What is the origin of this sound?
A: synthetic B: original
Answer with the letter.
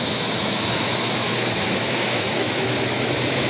A